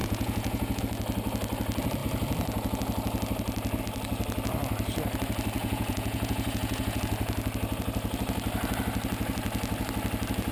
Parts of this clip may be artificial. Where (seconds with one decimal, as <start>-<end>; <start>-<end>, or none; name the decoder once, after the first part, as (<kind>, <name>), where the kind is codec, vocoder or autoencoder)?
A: 0.0-0.8 (vocoder, Vocos); 5.6-7.0